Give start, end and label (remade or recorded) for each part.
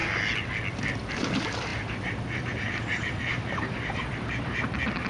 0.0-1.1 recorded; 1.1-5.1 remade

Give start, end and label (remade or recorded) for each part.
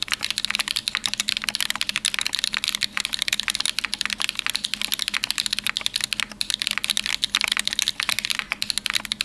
0.0-9.2 recorded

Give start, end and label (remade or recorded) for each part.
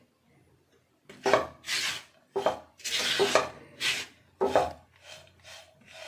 0.0-3.2 recorded; 3.2-4.3 remade; 4.3-6.1 recorded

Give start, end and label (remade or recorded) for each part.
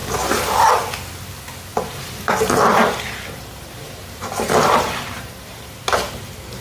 0.0-1.7 recorded; 1.7-5.7 remade; 5.7-6.6 recorded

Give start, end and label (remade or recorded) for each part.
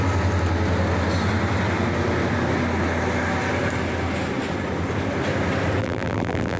0.0-5.8 recorded; 5.8-6.6 remade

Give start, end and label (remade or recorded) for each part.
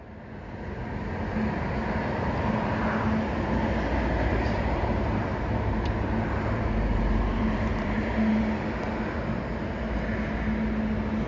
0.0-4.3 recorded; 4.3-8.4 remade; 8.4-11.3 recorded